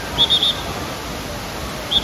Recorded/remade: recorded